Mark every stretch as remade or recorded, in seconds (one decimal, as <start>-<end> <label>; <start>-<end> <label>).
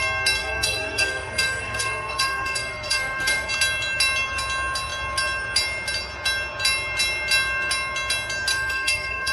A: 0.0-0.4 recorded; 0.4-3.5 remade; 3.5-8.5 recorded; 8.5-9.3 remade